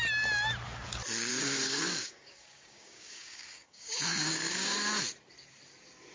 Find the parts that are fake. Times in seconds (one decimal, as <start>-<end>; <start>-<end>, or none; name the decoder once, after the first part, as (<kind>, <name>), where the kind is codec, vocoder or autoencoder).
1.3-5.0 (codec, DAC)